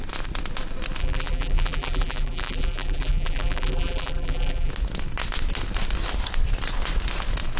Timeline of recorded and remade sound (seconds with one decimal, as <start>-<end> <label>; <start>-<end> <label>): 0.0-1.0 recorded; 1.0-4.7 remade; 4.7-7.6 recorded